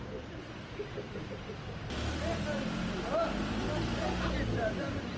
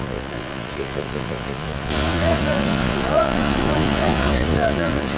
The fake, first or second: second